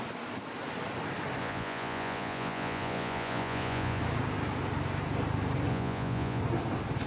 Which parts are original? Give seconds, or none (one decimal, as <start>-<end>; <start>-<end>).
0.0-1.4; 4.0-5.7; 6.4-7.1